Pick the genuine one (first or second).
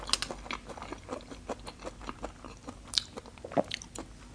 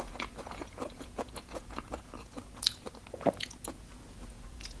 first